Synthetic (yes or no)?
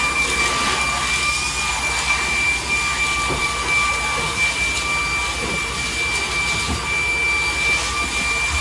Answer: no